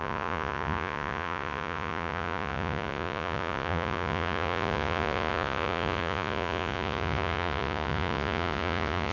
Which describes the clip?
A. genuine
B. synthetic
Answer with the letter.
B